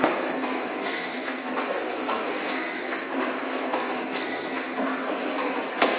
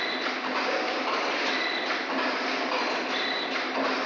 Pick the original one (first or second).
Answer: second